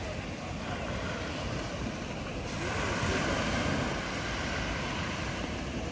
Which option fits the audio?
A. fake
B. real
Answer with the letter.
B